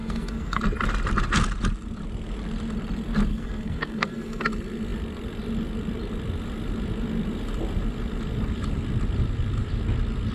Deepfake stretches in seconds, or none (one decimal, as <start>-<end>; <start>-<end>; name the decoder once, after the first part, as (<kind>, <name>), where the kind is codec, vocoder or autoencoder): 0.0-0.6 (codec, SNAC); 3.3-4.4